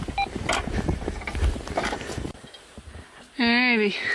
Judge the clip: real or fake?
real